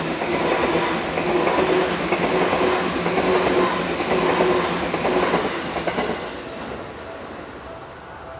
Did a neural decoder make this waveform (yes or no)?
no